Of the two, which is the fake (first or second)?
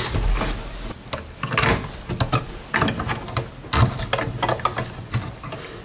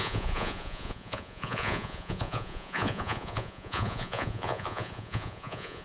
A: second